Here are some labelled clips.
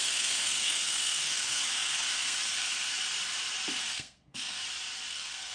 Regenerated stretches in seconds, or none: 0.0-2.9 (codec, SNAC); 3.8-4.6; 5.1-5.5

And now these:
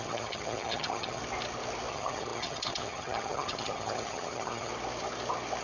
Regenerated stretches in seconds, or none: 0.0-1.2 (vocoder, HiFi-GAN); 1.9-4.7